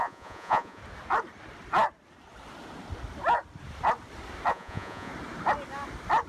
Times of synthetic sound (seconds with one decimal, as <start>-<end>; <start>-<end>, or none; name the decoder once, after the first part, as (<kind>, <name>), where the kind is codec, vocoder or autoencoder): 0.0-0.8 (vocoder, Vocos); 4.5-5.1